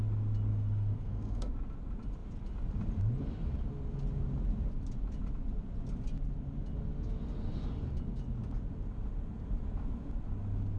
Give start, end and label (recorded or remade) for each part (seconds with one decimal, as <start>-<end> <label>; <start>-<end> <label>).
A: 0.0-0.5 recorded; 0.5-1.5 remade; 1.5-10.8 recorded